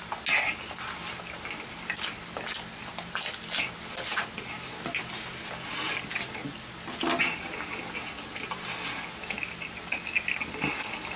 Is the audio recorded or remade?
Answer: recorded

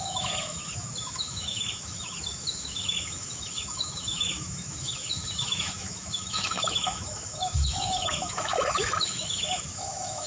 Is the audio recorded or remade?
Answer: remade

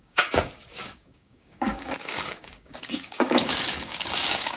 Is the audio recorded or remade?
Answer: remade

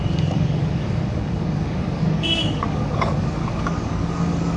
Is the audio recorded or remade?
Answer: remade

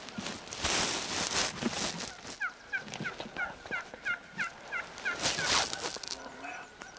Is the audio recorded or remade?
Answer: recorded